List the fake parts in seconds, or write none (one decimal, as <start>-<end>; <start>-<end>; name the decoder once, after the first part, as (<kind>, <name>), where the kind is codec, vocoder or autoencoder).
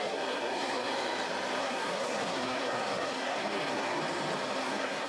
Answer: 0.0-0.9 (codec, SNAC); 1.6-4.0; 4.6-5.1